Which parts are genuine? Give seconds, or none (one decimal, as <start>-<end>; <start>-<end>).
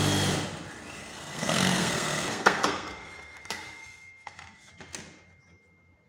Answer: 0.0-1.0; 4.7-6.1